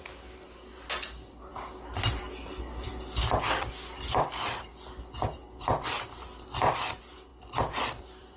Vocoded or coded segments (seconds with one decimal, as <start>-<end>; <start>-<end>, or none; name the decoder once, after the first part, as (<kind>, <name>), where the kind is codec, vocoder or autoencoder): 7.3-8.4 (vocoder, BigVGAN v2)

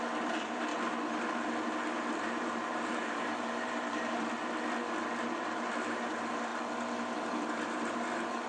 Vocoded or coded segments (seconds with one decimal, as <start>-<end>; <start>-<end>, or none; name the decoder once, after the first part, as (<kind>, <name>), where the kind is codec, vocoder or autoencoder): 0.0-0.7 (vocoder, BigVGAN v2); 2.1-4.4; 5.3-6.5; 7.4-8.5

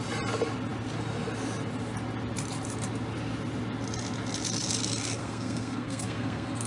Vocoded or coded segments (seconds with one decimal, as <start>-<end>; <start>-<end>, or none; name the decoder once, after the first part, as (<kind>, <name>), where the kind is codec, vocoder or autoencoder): 5.2-6.7 (codec, SNAC)

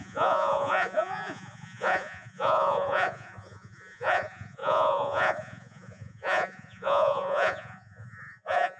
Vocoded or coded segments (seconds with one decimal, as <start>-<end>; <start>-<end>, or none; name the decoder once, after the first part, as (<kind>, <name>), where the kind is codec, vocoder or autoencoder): 0.0-8.8 (vocoder, Vocos)

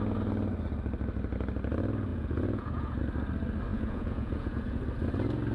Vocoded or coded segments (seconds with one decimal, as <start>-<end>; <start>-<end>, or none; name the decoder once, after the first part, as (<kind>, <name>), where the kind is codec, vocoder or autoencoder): 2.1-3.0 (vocoder, Vocos); 3.7-4.8

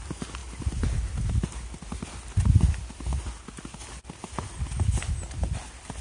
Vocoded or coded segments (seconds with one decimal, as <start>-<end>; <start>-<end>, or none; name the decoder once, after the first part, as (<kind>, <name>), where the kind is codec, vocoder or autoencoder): none

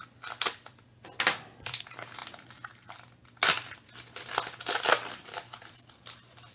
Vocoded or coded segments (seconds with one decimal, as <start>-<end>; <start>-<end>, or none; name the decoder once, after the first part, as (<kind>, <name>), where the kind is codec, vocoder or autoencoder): none

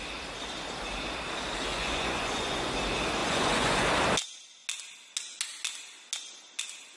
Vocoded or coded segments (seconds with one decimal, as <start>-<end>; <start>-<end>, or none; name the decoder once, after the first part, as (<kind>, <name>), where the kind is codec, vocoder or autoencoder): 1.7-2.7 (vocoder, Vocos); 3.2-3.9